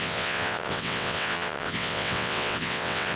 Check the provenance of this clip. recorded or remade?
remade